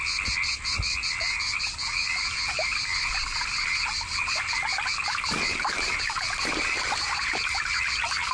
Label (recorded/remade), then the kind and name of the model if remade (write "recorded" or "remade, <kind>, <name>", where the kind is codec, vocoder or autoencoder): recorded